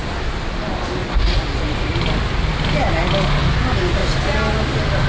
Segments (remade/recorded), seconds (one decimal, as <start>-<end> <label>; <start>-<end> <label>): 0.0-5.1 recorded